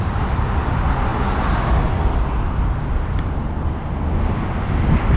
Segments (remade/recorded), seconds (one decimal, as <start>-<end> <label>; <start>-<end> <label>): 0.0-5.2 recorded